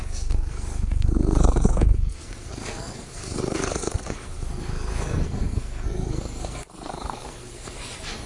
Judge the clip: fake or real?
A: fake